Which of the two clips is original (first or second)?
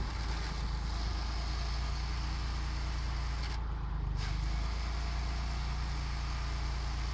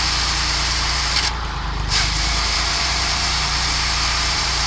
first